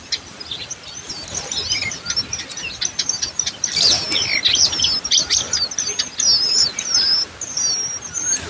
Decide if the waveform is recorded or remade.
recorded